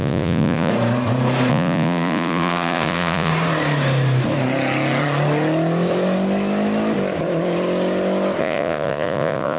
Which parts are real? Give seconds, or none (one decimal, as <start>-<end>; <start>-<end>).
0.7-1.5; 3.3-8.4